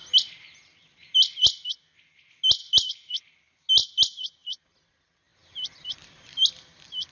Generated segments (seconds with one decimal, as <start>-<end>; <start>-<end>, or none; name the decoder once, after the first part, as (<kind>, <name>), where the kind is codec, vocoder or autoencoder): 2.6-3.3 (vocoder, BigVGAN v2); 5.3-6.5